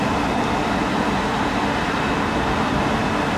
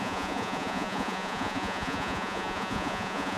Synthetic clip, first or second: second